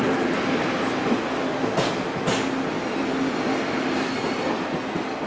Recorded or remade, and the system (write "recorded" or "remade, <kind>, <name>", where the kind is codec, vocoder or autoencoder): recorded